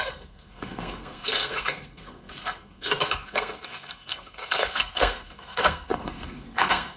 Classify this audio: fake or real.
fake